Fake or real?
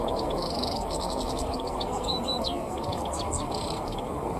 fake